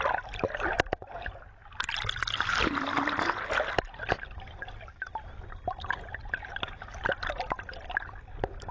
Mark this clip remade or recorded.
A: recorded